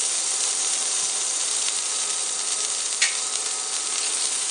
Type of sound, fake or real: real